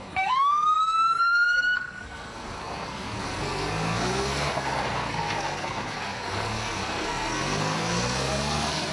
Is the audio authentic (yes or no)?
no